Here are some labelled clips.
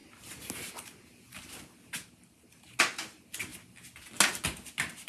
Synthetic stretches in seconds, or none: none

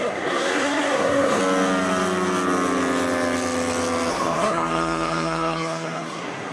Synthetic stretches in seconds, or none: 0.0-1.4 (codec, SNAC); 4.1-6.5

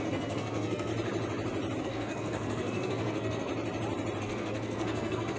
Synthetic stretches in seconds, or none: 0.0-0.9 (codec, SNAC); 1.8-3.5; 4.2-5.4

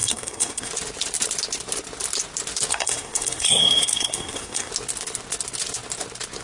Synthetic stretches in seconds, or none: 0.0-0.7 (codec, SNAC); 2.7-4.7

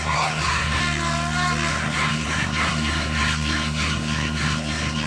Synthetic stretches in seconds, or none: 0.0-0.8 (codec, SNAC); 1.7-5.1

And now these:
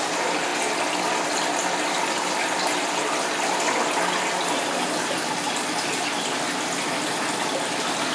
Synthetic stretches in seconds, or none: none